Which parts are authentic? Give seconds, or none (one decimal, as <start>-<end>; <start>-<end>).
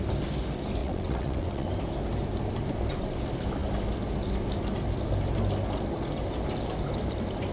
0.0-0.8; 1.7-7.5